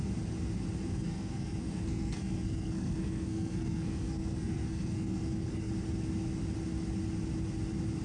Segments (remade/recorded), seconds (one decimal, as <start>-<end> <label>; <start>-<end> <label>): 0.0-0.9 recorded; 0.9-5.7 remade; 5.7-8.0 recorded